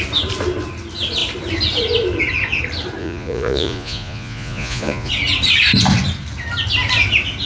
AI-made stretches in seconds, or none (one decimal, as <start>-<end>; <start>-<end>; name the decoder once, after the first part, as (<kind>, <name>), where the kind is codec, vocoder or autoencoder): 3.0-5.1 (vocoder, Vocos)